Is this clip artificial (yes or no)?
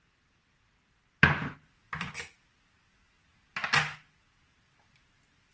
no